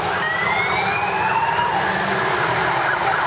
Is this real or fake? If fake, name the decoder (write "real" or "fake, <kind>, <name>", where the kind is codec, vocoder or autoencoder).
real